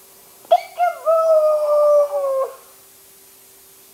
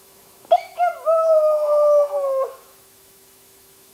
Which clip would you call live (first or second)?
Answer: first